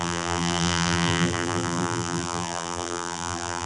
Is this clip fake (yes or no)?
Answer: yes